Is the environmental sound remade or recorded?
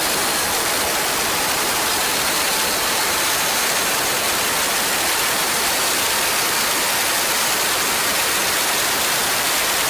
remade